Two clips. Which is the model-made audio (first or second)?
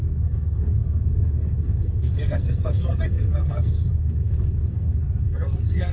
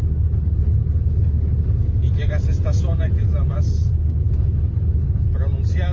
first